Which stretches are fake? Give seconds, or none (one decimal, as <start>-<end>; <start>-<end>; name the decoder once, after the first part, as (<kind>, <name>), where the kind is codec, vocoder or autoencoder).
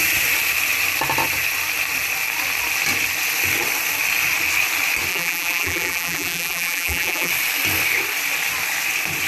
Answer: 5.1-7.3 (vocoder, BigVGAN v2)